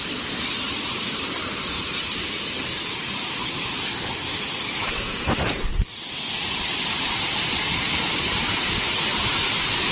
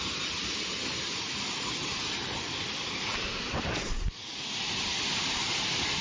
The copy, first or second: first